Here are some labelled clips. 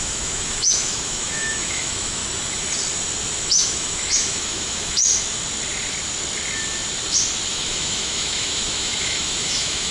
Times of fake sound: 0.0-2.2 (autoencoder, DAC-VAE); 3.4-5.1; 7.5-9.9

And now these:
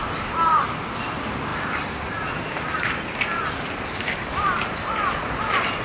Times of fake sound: 0.0-5.8 (vocoder, BigVGAN v2)

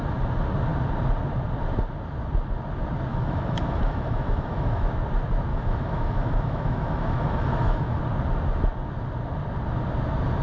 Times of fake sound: 3.1-4.9 (autoencoder, DAC-VAE); 5.5-8.0

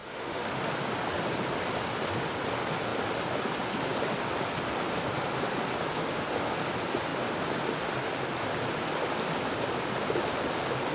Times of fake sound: 0.0-0.6 (autoencoder, DAC-VAE)

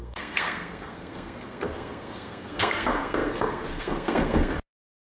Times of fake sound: 0.0-5.0 (codec, SNAC)

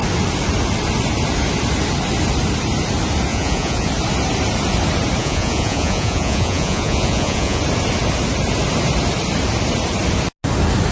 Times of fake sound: 3.3-3.9 (vocoder, Vocos); 5.2-7.6

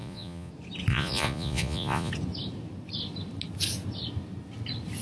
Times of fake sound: 0.0-0.5 (vocoder, Vocos); 0.9-2.1

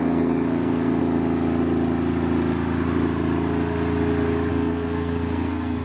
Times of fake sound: 0.0-1.0 (codec, SNAC); 4.5-5.8